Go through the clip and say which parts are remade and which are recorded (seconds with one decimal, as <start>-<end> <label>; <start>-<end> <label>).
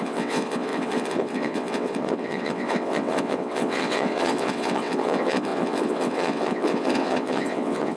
0.0-8.0 remade